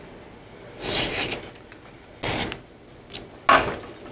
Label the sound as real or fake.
real